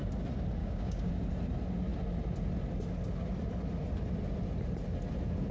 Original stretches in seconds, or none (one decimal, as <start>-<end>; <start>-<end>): 0.0-0.6; 1.1-5.5

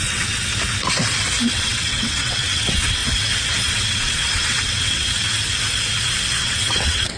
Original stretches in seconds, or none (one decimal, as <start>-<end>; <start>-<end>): 0.5-1.5; 3.0-3.7; 5.4-6.4